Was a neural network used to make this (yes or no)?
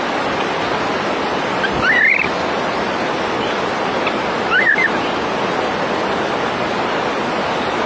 no